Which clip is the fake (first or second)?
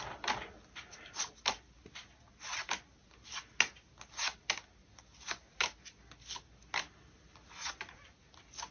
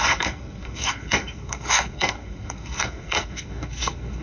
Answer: second